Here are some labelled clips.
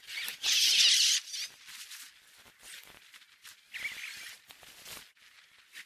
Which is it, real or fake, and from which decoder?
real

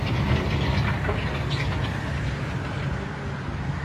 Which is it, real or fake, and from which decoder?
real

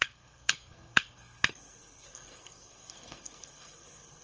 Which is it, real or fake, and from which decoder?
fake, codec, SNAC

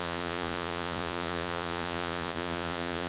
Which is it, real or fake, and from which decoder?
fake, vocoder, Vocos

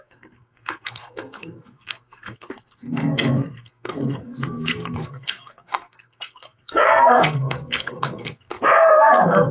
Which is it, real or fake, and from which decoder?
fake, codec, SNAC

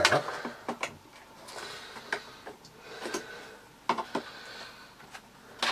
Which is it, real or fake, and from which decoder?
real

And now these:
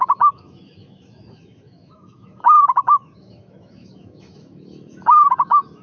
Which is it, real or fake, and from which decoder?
fake, autoencoder, DAC-VAE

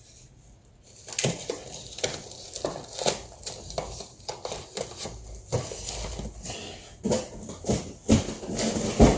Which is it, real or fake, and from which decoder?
real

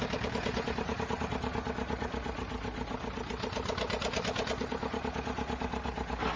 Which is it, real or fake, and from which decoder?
real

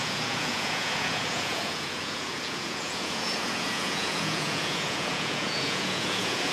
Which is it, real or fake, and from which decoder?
fake, vocoder, Vocos